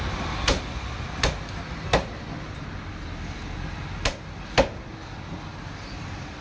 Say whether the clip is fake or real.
real